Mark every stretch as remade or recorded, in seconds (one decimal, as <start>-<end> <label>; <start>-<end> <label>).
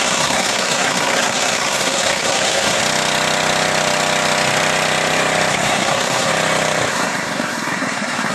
0.0-2.8 remade; 2.8-5.5 recorded; 5.5-6.3 remade; 6.3-6.9 recorded; 6.9-8.3 remade